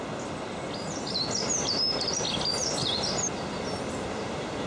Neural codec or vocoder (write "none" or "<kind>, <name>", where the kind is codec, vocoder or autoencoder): none